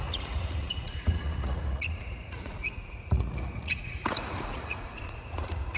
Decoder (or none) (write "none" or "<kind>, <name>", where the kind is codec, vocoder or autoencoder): vocoder, Vocos